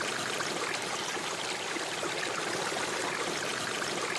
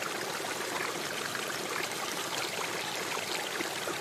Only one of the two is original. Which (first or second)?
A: first